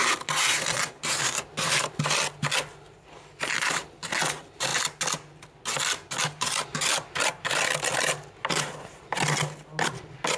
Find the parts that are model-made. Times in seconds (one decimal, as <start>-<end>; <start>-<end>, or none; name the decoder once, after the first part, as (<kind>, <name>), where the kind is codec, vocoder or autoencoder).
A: none